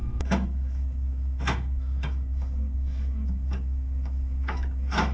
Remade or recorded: remade